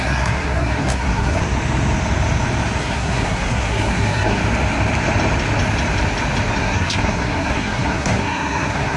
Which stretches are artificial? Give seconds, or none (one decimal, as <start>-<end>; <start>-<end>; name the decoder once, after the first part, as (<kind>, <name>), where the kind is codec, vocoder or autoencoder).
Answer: 0.0-1.4 (codec, SNAC); 2.8-4.4; 6.6-9.0